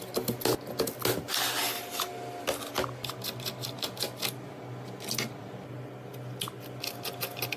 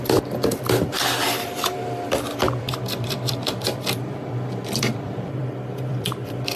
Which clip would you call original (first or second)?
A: first